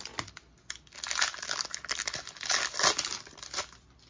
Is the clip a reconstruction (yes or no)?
no